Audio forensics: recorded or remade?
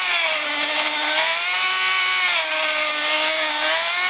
recorded